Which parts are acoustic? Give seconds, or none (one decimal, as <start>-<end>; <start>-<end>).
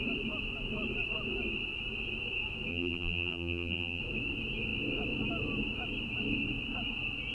0.0-2.7; 4.0-7.3